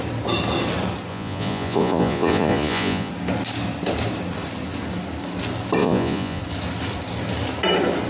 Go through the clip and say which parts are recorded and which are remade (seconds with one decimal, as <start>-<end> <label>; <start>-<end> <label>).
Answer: 0.0-1.1 recorded; 1.1-3.1 remade; 3.1-5.8 recorded; 5.8-6.4 remade; 6.4-8.1 recorded